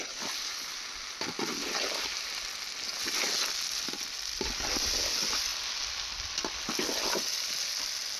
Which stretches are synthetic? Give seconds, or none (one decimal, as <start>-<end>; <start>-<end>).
none